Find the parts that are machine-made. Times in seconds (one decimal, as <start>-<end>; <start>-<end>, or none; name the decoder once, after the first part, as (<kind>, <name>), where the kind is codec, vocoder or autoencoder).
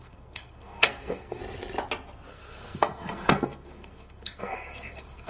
0.0-1.4 (codec, SNAC); 2.3-5.3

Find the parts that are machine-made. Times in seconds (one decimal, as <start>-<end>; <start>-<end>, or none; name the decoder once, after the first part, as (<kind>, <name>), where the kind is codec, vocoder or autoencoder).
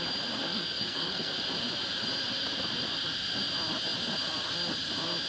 0.4-1.4 (codec, SNAC)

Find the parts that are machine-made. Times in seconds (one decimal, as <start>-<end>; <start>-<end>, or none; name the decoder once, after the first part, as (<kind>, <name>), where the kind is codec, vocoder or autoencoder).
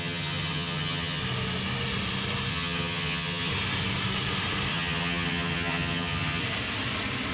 0.0-1.2 (vocoder, HiFi-GAN); 2.5-3.5; 4.7-6.4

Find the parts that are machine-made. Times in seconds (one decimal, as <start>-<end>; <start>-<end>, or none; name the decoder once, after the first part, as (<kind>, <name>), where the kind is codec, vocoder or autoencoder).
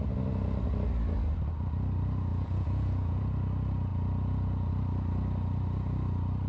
2.3-3.2 (vocoder, Vocos); 3.9-4.7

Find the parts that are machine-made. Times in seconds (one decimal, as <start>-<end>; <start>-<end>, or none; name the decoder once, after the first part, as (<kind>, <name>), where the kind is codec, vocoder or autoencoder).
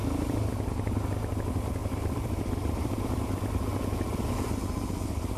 0.0-0.9 (vocoder, BigVGAN v2); 1.8-3.5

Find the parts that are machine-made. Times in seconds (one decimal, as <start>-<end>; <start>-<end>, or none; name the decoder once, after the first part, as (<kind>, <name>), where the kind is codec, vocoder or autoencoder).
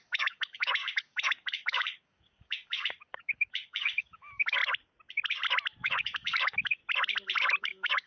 0.0-4.6 (codec, DAC); 5.8-6.8; 7.6-8.1